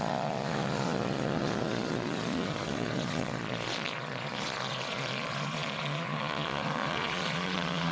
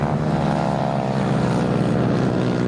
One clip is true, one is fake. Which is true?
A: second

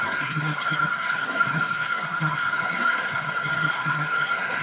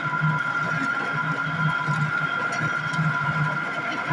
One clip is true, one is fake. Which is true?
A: second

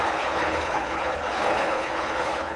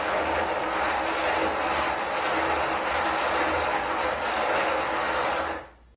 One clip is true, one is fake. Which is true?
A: second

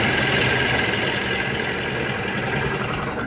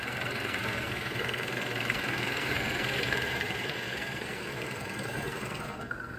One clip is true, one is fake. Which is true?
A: first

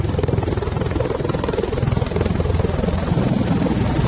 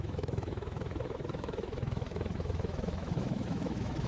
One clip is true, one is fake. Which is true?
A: first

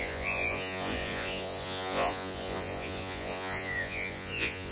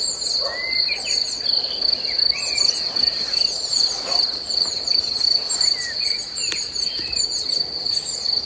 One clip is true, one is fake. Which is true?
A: second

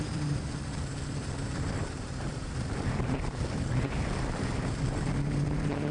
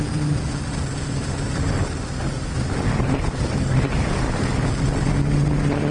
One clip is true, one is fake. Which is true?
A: second